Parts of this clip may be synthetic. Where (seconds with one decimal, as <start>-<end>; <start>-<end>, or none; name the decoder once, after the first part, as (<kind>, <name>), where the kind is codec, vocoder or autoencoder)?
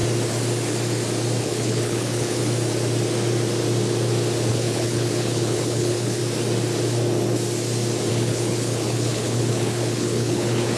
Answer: 1.4-2.4 (codec, HILCodec); 4.5-6.2; 8.1-10.8